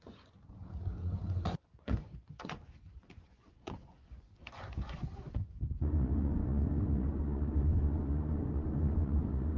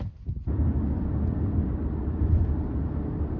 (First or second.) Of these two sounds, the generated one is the first